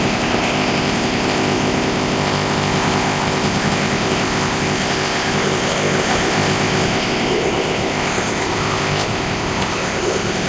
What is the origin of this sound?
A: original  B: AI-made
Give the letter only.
B